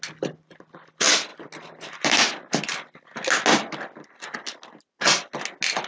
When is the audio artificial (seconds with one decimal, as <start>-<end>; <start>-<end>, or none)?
none